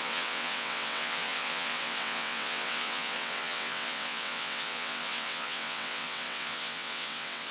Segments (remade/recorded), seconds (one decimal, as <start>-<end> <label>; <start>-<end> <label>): 0.0-7.5 remade